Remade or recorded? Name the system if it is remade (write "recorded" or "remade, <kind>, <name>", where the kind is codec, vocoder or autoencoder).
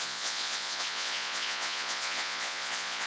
remade, vocoder, Vocos